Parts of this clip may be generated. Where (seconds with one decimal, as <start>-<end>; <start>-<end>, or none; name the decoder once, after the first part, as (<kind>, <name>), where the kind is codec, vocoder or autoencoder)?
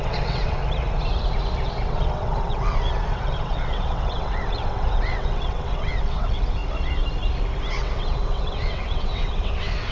0.0-0.6 (vocoder, WaveNeXt); 1.7-6.6; 7.7-9.9